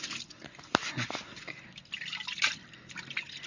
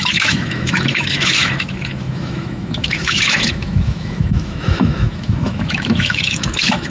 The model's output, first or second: second